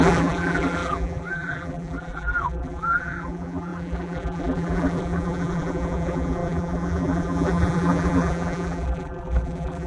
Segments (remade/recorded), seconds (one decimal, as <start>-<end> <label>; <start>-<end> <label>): 0.0-9.9 remade